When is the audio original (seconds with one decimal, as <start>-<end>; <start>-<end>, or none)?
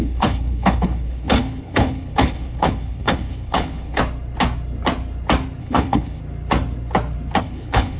4.0-5.6; 6.2-7.4